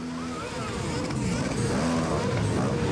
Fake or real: real